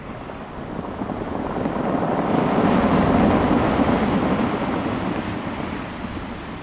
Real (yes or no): yes